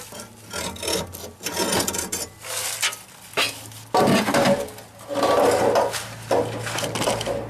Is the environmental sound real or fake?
real